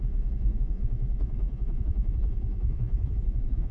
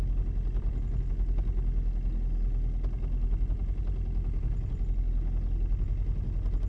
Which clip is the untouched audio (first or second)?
second